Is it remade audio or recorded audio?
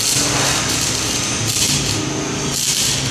recorded